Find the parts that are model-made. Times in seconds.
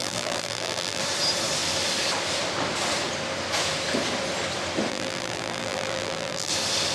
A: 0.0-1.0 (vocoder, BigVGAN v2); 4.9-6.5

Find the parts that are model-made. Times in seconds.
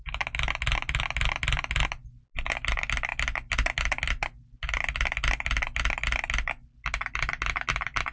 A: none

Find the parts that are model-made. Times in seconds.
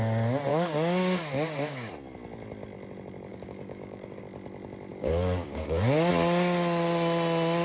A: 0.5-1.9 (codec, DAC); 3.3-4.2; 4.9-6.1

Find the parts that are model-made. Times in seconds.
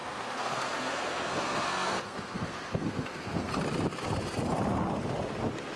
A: 0.0-3.5 (codec, SNAC)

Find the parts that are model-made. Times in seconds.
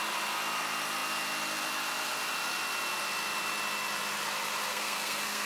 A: 4.7-5.5 (codec, SNAC)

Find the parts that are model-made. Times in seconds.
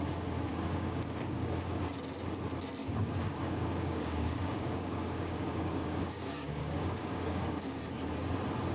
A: 0.5-1.8 (codec, DAC); 2.8-7.8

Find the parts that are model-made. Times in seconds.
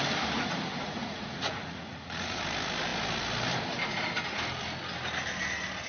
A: 0.7-2.4 (vocoder, Vocos)